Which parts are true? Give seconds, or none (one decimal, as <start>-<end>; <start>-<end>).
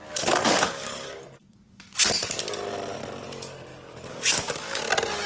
0.0-0.4; 2.0-3.7; 4.8-5.3